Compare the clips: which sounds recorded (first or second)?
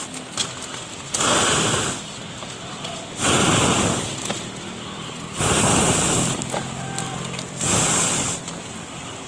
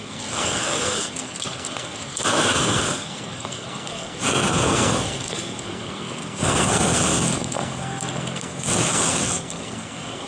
first